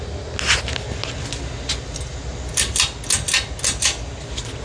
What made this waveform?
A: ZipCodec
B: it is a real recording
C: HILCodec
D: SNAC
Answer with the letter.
B